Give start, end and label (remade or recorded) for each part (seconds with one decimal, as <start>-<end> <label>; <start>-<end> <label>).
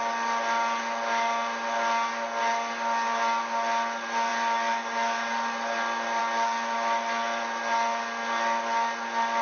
0.0-9.4 recorded